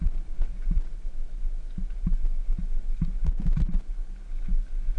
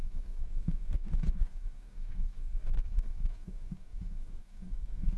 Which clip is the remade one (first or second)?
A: second